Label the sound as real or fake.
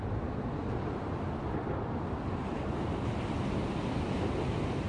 real